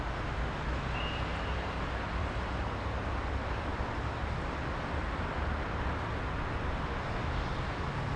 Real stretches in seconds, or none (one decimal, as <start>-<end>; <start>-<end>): 0.0-2.2; 2.7-8.2